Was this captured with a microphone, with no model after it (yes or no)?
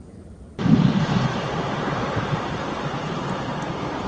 yes